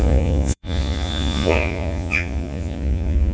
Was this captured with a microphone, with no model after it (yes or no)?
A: no